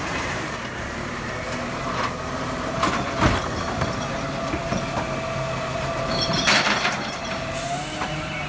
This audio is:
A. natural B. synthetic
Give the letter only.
B